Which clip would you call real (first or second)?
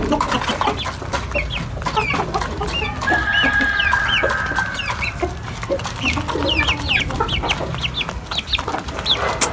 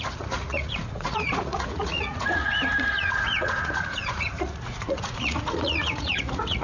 first